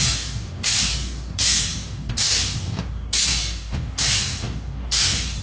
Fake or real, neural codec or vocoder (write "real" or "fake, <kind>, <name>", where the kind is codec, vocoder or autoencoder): fake, codec, DAC